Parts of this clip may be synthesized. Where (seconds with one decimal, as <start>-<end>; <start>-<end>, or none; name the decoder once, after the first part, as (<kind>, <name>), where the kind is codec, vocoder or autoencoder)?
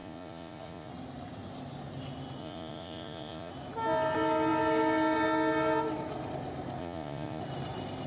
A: 0.0-0.9 (vocoder, Vocos); 2.4-3.5; 6.8-7.4